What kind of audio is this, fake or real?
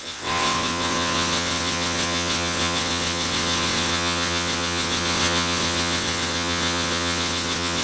fake